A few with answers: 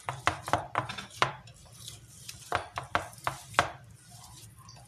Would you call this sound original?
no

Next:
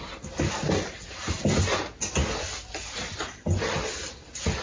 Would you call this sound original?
yes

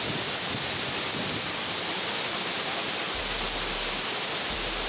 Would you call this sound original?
yes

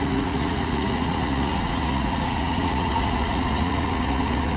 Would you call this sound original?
no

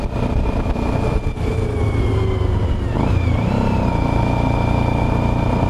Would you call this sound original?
yes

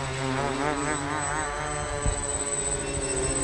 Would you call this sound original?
yes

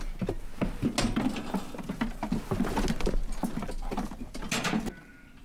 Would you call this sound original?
yes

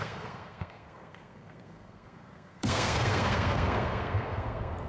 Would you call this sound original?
no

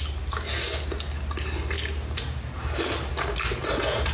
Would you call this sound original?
yes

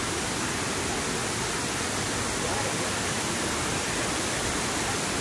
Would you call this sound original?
yes